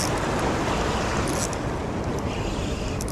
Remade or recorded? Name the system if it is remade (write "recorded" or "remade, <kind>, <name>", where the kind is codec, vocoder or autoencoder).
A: recorded